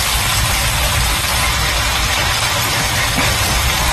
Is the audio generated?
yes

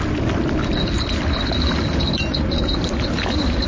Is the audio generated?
no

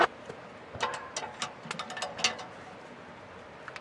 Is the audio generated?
no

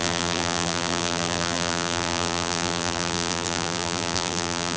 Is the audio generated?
yes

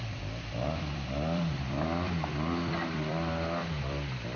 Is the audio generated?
yes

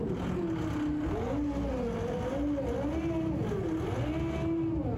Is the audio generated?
no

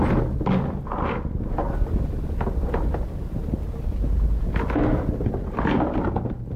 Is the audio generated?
no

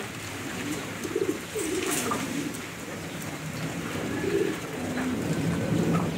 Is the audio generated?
yes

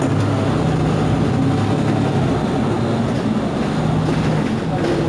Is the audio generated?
no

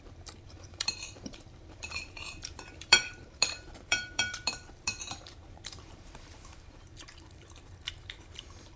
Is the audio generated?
yes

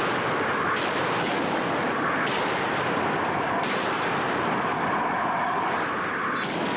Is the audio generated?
no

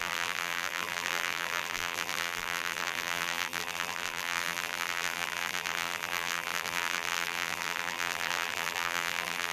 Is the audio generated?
yes